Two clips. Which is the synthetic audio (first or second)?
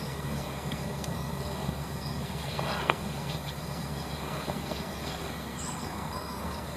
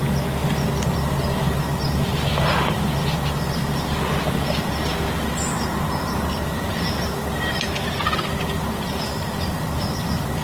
first